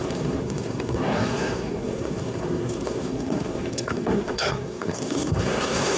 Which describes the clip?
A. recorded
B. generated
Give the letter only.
B